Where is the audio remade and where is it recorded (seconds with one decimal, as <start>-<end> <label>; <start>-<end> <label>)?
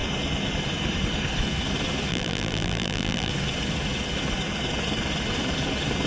0.0-2.1 recorded; 2.1-3.3 remade; 3.3-6.1 recorded